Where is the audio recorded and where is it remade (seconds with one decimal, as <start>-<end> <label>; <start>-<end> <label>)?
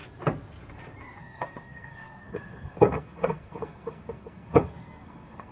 0.0-1.2 recorded; 1.2-5.5 remade